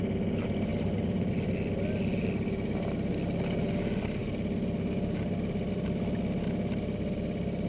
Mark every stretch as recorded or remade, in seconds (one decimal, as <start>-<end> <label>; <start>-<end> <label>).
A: 0.0-0.7 recorded; 0.7-1.3 remade; 1.3-7.7 recorded